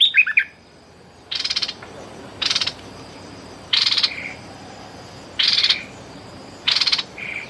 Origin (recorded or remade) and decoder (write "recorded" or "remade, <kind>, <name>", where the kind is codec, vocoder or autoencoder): remade, vocoder, BigVGAN v2